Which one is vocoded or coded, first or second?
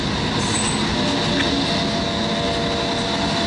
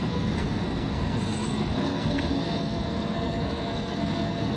second